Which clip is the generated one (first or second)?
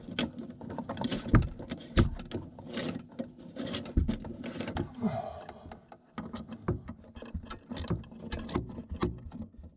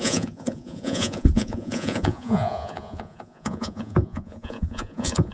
second